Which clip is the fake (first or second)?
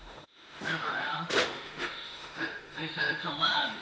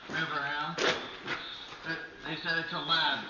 first